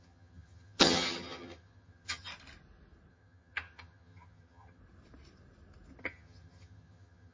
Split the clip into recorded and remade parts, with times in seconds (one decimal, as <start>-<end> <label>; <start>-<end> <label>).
0.0-2.3 remade; 2.3-3.1 recorded; 3.1-4.8 remade; 4.8-6.0 recorded; 6.0-7.3 remade